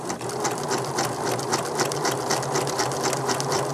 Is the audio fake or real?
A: real